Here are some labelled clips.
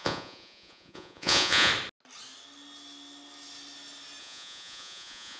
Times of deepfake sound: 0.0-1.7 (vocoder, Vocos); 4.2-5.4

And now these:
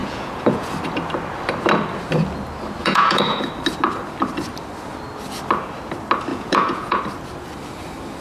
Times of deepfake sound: 0.0-0.7 (vocoder, Vocos); 2.8-3.4; 6.3-7.0

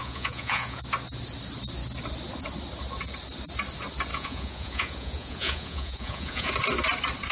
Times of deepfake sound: 0.0-0.8 (vocoder, Vocos); 4.1-6.5

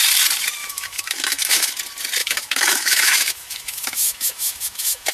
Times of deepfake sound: 0.6-1.7 (autoencoder, DAC-VAE); 2.2-5.1

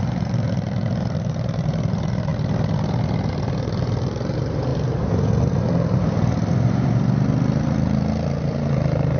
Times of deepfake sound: 0.0-2.3 (vocoder, BigVGAN v2); 3.3-4.7; 8.4-9.2

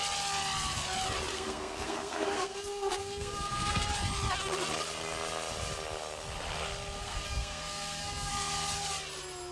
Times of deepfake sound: 1.3-3.9 (codec, SNAC); 7.0-8.3